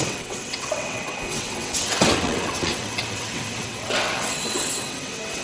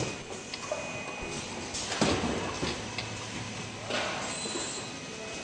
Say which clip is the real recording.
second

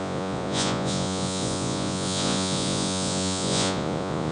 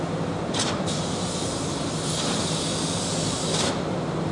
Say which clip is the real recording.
second